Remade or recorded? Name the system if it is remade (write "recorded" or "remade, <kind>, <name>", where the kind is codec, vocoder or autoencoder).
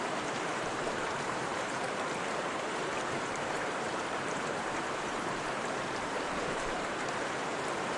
remade, vocoder, BigVGAN v2